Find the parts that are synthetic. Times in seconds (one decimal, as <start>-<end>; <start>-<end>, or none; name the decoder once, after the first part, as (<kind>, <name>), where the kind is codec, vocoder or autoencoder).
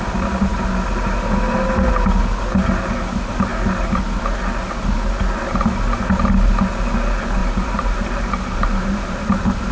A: 7.4-9.7 (vocoder, BigVGAN v2)